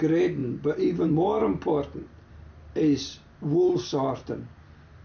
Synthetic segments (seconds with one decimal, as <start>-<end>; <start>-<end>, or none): 0.4-1.1